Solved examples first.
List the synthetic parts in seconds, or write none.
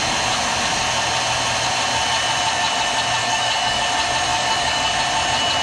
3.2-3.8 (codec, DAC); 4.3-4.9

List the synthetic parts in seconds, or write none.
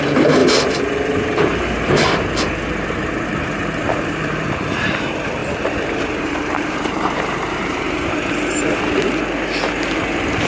0.4-4.5 (vocoder, BigVGAN v2); 5.4-8.8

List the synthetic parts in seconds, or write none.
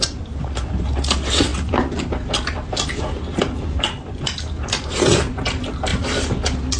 5.9-6.8 (vocoder, BigVGAN v2)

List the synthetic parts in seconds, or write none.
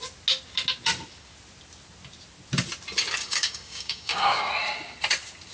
3.2-4.5 (codec, DAC)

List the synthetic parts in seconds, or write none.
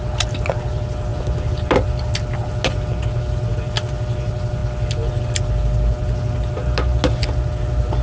none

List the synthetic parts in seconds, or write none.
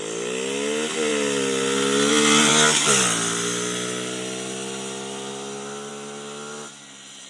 none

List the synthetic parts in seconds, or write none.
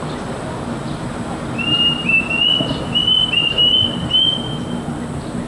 none